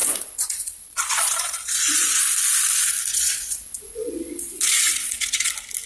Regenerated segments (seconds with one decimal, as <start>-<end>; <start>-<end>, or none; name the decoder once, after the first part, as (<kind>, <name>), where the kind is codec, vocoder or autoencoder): 0.0-2.2 (vocoder, Vocos); 3.1-5.5